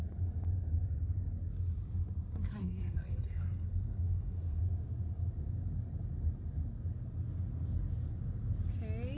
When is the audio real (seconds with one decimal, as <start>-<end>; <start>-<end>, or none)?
0.0-2.6; 4.6-9.2